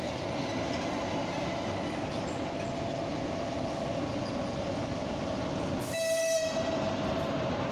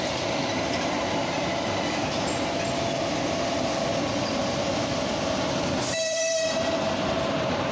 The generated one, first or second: second